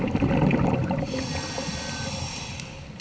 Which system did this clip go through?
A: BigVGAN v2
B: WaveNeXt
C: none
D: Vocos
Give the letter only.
C